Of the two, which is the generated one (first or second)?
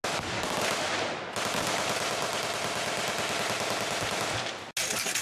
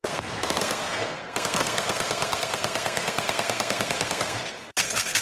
second